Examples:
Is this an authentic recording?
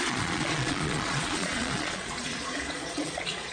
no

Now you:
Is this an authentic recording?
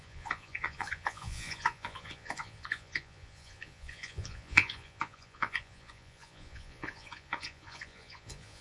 no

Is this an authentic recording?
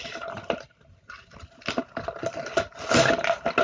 yes